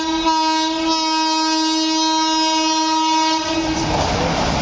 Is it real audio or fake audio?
real